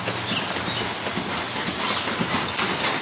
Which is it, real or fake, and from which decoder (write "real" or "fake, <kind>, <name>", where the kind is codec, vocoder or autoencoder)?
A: real